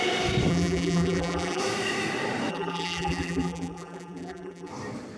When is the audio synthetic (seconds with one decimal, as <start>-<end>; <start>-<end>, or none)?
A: 0.5-1.6; 2.5-4.7